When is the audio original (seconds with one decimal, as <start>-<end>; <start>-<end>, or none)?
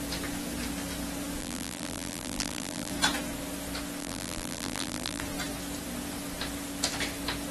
0.0-1.4; 2.9-4.0; 5.2-7.5